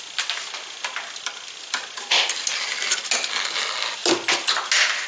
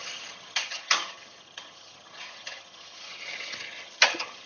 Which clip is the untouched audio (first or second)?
first